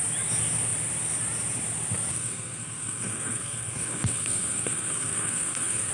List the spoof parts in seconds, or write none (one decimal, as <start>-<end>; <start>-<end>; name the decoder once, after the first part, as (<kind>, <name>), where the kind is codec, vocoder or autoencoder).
2.1-5.9 (codec, SNAC)